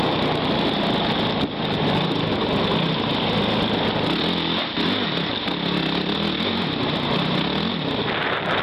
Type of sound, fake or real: real